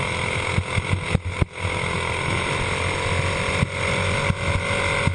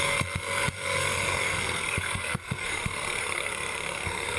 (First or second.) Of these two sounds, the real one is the first